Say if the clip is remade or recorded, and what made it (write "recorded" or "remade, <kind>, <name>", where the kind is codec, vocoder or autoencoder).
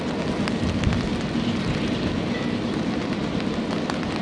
recorded